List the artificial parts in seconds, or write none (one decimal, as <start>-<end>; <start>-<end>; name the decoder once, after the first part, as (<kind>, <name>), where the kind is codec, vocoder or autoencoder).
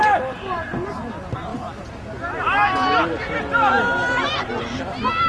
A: none